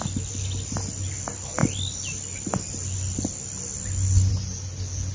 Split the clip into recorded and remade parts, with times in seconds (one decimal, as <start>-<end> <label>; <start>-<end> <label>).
0.0-5.1 recorded

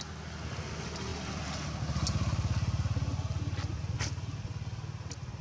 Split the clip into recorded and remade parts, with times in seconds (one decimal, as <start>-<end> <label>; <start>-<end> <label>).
0.0-5.4 recorded

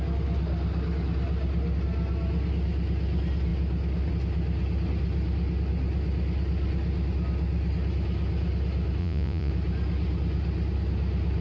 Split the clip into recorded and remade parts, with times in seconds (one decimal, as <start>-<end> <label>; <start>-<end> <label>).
0.0-9.0 recorded; 9.0-9.5 remade; 9.5-11.4 recorded

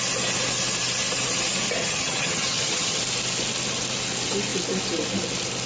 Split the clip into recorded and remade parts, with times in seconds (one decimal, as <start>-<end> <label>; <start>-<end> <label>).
0.0-1.8 recorded; 1.8-3.0 remade; 3.0-5.7 recorded

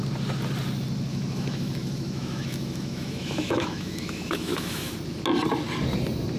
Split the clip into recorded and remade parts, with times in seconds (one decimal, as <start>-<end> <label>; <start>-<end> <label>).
0.0-1.1 recorded; 1.1-4.9 remade; 4.9-6.4 recorded

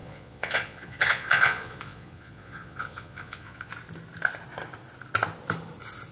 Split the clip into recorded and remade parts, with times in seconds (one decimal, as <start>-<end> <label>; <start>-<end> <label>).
0.0-3.7 remade; 3.7-6.1 recorded

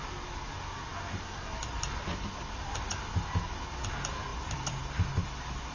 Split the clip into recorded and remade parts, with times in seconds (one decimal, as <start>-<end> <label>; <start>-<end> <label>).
0.0-4.3 recorded; 4.3-4.8 remade; 4.8-5.7 recorded